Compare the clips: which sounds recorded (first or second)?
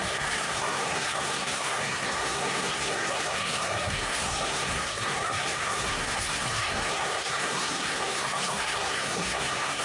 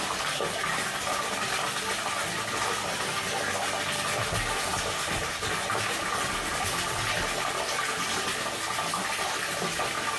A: second